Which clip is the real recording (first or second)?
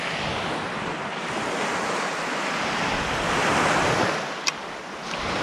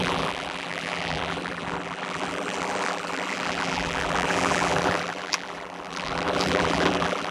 first